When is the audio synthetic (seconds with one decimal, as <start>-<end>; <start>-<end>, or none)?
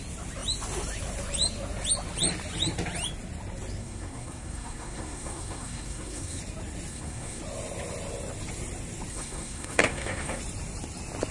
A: 3.8-6.4; 6.9-7.4; 9.1-10.4